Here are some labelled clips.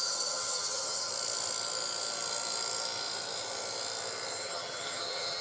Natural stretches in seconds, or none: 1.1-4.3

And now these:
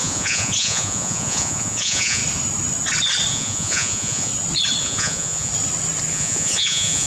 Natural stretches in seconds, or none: 2.2-3.3; 4.3-4.8; 5.5-6.1

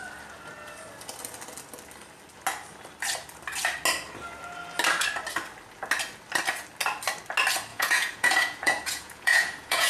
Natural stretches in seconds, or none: 0.0-7.7

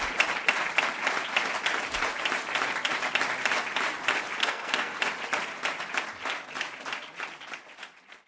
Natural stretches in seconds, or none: 0.0-4.4; 5.0-8.3

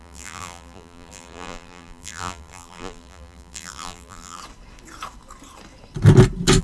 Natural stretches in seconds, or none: 4.4-6.6

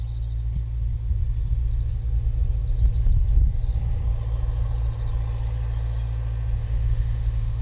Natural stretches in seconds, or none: 0.0-6.6

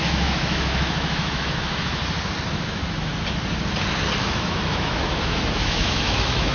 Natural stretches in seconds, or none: 2.0-2.6; 3.1-4.2